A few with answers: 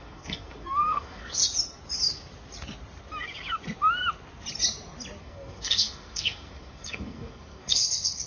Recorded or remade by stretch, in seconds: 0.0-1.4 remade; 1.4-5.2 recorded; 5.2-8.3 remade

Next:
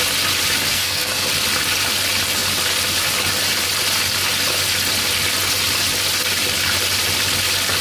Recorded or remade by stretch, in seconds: 0.0-0.7 recorded; 0.7-1.3 remade; 1.3-7.8 recorded

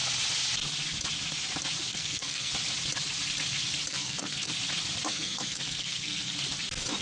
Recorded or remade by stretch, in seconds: 0.0-1.9 recorded; 1.9-2.5 remade; 2.5-3.9 recorded; 3.9-4.5 remade; 4.5-5.1 recorded; 5.1-6.3 remade; 6.3-7.0 recorded

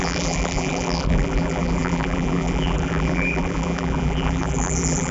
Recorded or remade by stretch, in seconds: 0.0-5.1 remade

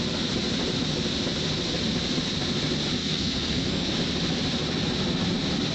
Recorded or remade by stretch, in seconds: 0.0-3.0 recorded; 3.0-3.9 remade; 3.9-5.7 recorded

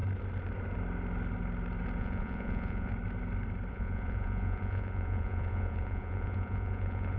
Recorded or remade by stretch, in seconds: 0.0-2.0 recorded; 2.0-2.9 remade; 2.9-3.7 recorded; 3.7-7.2 remade